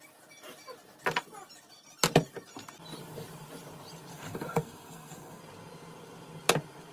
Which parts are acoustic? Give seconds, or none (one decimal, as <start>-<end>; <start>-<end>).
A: 0.0-4.1; 5.4-6.9